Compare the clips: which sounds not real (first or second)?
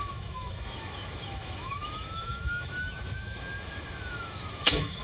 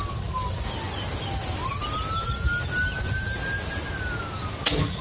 first